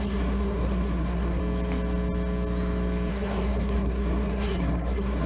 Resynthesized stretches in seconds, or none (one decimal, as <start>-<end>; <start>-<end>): 0.0-1.4; 3.1-5.3